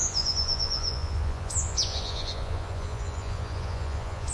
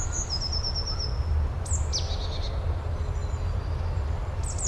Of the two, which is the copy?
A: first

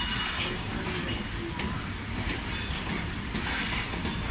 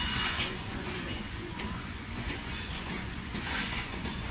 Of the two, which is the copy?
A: second